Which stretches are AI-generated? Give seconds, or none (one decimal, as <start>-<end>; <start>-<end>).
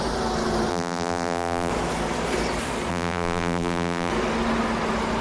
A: 0.7-1.7; 2.9-4.1